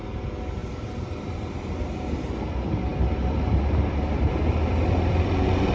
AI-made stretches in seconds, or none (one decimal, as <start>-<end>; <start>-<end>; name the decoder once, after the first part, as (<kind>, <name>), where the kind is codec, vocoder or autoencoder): none